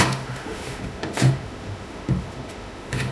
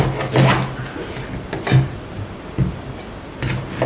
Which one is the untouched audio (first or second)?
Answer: second